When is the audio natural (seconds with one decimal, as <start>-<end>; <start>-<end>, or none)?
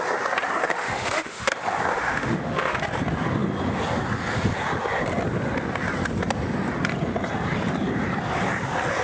0.0-0.6; 1.5-1.9; 2.8-9.0